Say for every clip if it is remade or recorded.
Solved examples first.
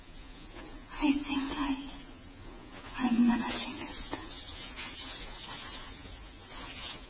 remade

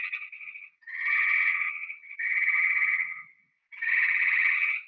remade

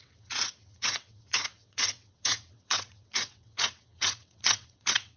remade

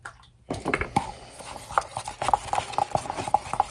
recorded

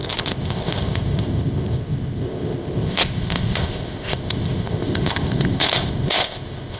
remade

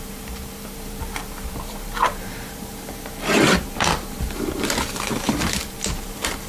remade